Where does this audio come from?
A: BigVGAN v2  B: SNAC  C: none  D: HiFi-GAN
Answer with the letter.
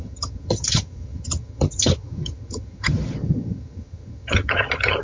D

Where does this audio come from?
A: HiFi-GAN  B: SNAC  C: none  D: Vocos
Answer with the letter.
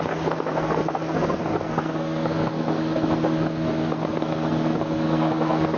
B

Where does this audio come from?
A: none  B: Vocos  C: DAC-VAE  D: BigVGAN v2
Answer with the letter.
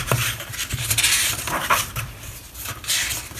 D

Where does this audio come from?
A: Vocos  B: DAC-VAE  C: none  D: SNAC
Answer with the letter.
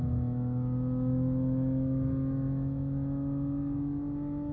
B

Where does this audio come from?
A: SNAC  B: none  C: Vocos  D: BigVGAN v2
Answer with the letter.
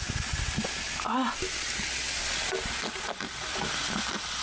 B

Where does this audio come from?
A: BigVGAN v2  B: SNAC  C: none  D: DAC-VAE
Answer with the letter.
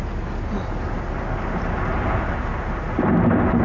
C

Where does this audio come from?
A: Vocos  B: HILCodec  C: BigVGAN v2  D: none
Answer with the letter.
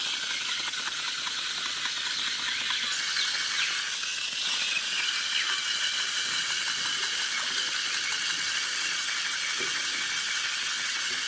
D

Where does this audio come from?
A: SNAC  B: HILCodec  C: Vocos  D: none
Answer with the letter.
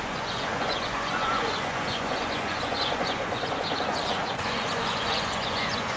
C